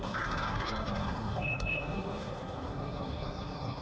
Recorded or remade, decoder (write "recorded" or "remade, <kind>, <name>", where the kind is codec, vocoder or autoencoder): remade, codec, SNAC